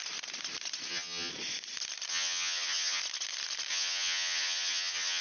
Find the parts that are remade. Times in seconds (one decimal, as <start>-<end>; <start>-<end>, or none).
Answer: 0.9-1.3; 2.1-3.0; 3.7-5.2

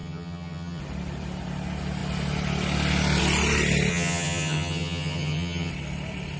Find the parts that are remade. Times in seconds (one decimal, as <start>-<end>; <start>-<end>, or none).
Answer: 0.0-0.8; 3.9-5.7